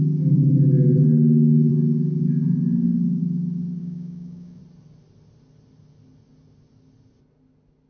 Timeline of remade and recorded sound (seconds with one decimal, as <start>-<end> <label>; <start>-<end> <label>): 0.0-3.8 recorded; 3.8-4.6 remade; 4.6-7.9 recorded